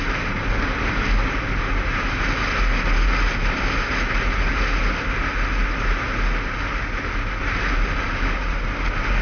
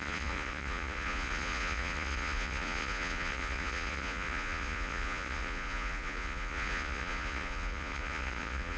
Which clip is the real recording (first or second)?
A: first